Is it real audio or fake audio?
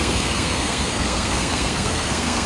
fake